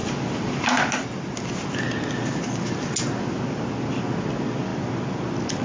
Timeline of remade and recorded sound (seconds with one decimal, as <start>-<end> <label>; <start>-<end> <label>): 0.0-5.6 recorded